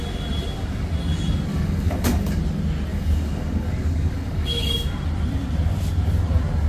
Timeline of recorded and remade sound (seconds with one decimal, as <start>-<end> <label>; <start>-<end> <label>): 0.0-1.5 recorded; 1.5-2.4 remade; 2.4-2.9 recorded; 2.9-4.7 remade; 4.7-6.7 recorded